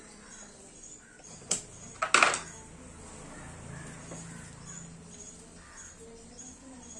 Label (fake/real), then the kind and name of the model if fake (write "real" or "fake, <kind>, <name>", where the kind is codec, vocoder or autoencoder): real